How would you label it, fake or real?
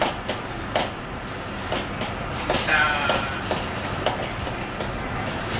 real